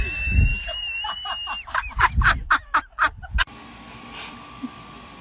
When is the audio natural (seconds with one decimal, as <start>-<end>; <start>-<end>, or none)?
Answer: 0.0-5.2